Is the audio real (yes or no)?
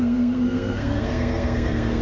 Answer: no